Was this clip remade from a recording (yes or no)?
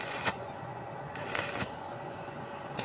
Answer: yes